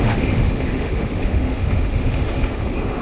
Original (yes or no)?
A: no